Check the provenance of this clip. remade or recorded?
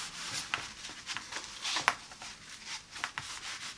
recorded